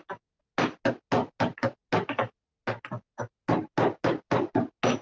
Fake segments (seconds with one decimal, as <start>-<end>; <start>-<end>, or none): none